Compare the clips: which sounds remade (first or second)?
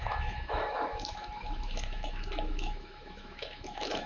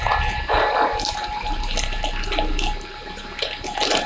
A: first